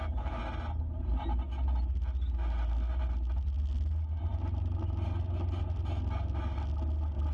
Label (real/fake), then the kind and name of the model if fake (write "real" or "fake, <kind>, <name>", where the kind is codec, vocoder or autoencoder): real